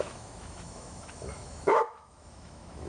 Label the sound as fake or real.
fake